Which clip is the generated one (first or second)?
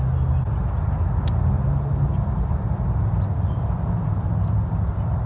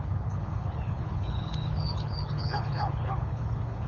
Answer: second